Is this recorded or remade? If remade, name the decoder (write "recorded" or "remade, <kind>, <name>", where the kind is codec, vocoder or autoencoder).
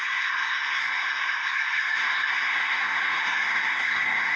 remade, codec, SNAC